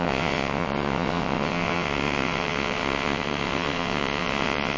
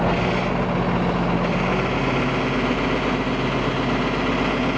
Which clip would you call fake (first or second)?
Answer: first